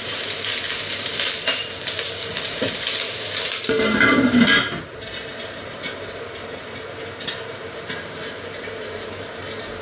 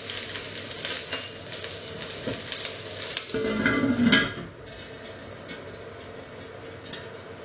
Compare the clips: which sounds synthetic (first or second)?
first